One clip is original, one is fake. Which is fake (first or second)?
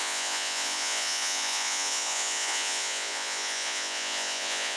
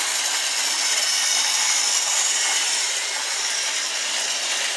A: first